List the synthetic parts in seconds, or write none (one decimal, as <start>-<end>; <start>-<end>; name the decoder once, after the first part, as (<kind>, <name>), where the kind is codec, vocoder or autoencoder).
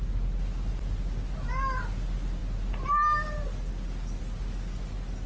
none